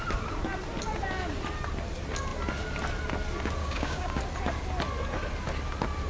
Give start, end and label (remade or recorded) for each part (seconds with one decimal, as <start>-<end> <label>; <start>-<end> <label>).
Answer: 0.0-3.6 recorded; 3.6-4.2 remade; 4.2-6.1 recorded